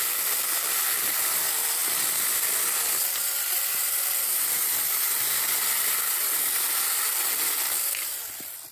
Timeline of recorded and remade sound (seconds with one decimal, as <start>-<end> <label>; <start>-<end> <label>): 0.0-1.8 recorded; 1.8-6.8 remade; 6.8-8.7 recorded